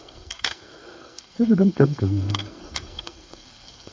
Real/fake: fake